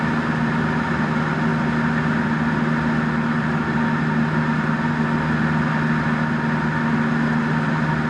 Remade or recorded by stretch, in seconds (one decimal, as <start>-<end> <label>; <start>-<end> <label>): 0.0-8.1 recorded